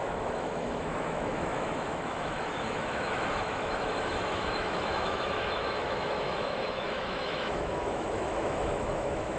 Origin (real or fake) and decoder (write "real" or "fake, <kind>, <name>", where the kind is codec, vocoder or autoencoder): fake, autoencoder, DAC-VAE